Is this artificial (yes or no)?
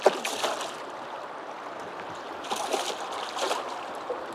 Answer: no